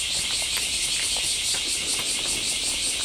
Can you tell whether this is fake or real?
real